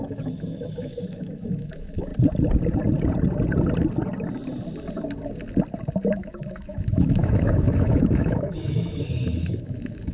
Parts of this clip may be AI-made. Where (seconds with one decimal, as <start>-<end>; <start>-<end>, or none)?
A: 0.0-2.1; 6.1-10.1